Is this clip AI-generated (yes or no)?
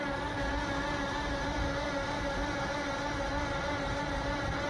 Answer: no